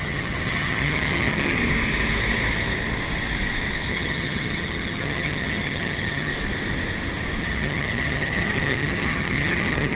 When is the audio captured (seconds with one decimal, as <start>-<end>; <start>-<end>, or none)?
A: 1.6-3.9; 6.3-7.4